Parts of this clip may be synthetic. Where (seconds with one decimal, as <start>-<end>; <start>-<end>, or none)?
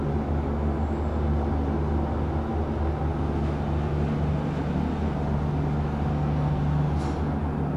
6.1-6.6